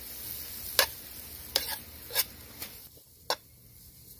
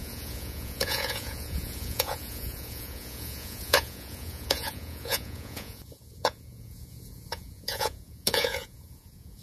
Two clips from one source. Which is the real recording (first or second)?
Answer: first